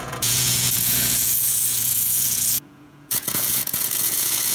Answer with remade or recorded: remade